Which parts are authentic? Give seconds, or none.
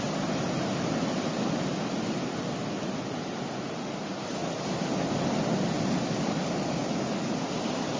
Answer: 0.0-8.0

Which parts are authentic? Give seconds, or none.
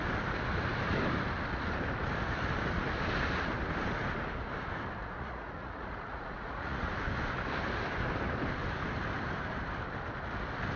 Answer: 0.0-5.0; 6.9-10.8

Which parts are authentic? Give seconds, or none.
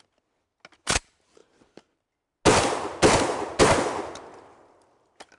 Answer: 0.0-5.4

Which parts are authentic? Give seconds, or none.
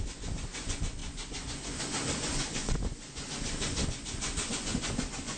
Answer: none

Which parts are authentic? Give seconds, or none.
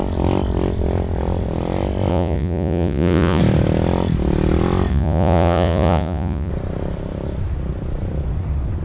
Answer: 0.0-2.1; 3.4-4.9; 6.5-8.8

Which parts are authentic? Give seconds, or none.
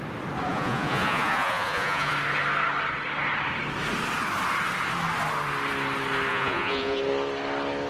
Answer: 0.0-0.5; 2.1-6.3; 7.0-7.9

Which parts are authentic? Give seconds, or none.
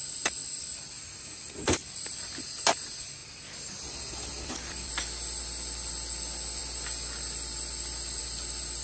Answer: 0.0-8.8